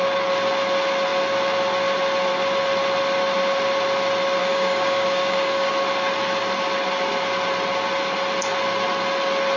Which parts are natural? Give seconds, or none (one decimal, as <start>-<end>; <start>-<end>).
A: 0.0-4.4; 5.7-9.6